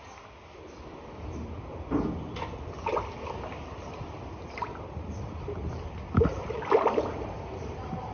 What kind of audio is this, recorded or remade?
recorded